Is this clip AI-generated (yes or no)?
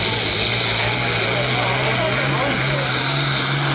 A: no